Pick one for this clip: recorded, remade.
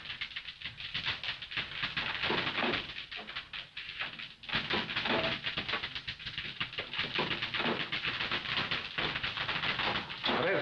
recorded